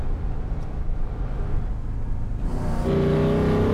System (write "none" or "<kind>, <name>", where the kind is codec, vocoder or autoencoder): none